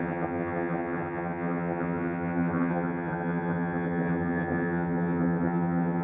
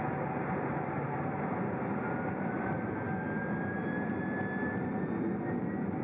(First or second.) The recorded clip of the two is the second